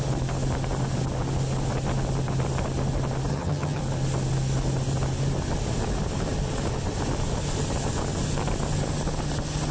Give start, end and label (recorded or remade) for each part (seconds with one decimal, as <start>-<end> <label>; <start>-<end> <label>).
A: 0.0-3.3 recorded; 3.3-3.8 remade; 3.8-9.7 recorded